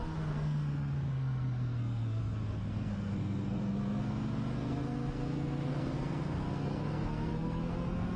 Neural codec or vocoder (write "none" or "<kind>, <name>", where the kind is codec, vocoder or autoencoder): codec, SNAC